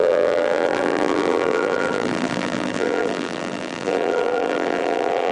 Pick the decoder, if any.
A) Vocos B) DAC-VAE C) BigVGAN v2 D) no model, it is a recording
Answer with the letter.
C